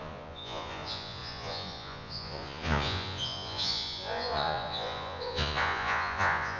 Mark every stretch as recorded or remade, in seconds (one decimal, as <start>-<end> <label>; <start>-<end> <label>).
0.0-6.6 remade